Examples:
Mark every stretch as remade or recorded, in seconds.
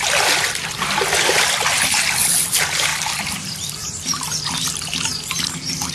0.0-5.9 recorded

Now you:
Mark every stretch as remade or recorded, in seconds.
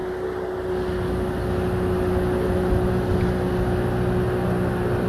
0.0-5.1 recorded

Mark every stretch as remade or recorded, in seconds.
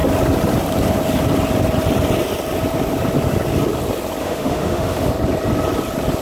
0.0-4.2 recorded; 4.2-5.1 remade; 5.1-6.2 recorded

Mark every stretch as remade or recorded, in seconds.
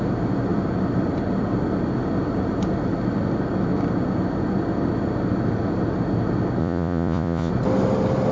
0.0-6.6 recorded; 6.6-7.5 remade; 7.5-8.3 recorded